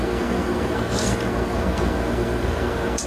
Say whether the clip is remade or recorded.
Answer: remade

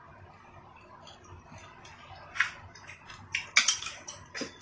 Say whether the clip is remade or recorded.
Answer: recorded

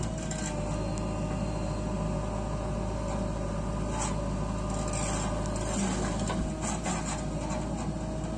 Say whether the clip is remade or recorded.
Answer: recorded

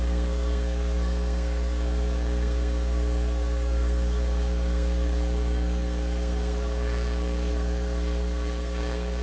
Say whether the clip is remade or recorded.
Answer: remade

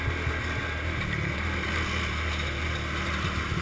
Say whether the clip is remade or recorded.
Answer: recorded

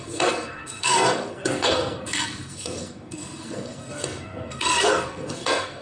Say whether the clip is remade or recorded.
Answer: remade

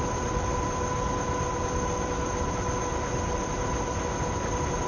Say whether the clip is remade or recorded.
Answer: recorded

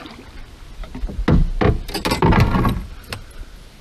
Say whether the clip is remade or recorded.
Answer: recorded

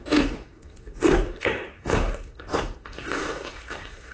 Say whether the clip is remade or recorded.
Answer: remade